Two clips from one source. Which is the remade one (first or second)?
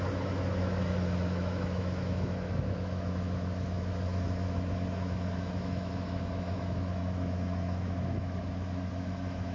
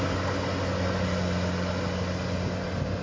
first